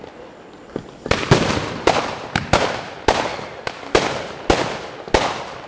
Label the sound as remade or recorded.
recorded